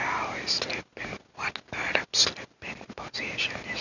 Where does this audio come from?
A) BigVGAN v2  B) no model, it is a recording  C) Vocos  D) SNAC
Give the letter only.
B